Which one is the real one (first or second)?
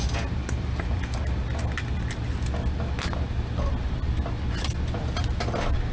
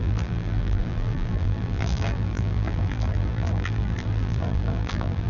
first